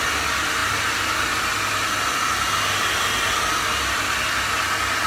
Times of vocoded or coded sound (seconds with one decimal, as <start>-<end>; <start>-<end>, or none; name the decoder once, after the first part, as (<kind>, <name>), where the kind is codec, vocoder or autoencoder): none